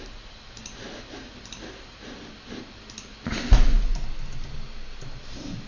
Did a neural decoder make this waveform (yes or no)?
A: no